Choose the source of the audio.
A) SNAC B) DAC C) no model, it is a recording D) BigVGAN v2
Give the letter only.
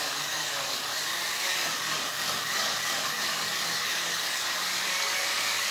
B